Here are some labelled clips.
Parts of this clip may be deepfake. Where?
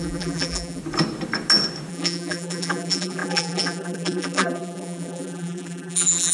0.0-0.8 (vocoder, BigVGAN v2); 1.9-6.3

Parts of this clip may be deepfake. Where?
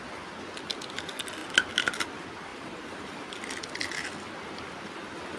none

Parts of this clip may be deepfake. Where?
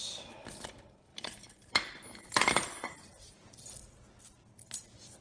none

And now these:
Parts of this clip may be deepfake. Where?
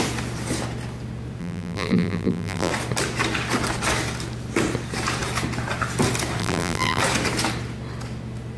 1.4-2.7 (vocoder, BigVGAN v2); 6.4-7.0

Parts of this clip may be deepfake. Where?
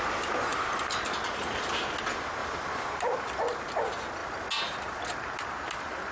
0.5-1.7 (vocoder, BigVGAN v2); 2.4-3.0